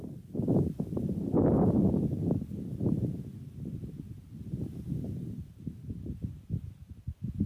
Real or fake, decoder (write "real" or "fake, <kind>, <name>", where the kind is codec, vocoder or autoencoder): fake, vocoder, BigVGAN v2